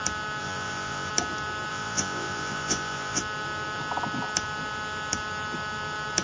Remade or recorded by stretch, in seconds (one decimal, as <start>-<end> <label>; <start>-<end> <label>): 0.0-0.4 recorded; 0.4-1.1 remade; 1.1-1.7 recorded; 1.7-3.2 remade; 3.2-6.2 recorded